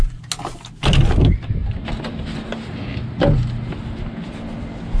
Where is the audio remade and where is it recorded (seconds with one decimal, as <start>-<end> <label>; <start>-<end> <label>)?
0.0-5.0 recorded